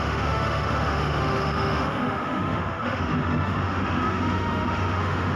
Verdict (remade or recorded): remade